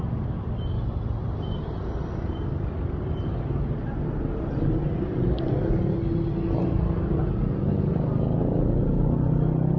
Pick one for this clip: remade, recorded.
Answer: recorded